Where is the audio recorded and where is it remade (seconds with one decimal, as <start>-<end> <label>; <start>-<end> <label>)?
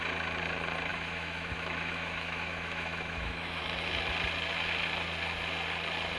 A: 0.0-0.9 recorded; 0.9-3.6 remade; 3.6-6.2 recorded